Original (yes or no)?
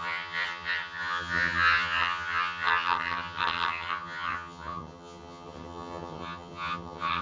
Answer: no